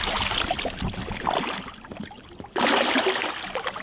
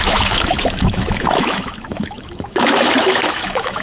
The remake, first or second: second